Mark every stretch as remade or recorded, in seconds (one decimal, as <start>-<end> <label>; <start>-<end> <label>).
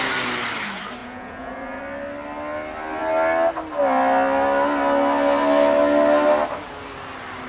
0.0-1.0 recorded; 1.0-1.8 remade; 1.8-7.5 recorded